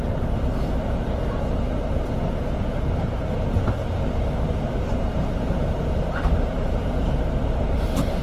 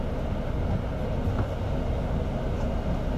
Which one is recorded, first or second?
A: second